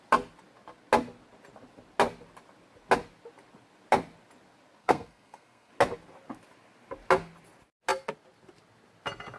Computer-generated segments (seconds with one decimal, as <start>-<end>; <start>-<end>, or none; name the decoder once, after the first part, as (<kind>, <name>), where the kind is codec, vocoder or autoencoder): 4.8-5.7 (codec, SNAC)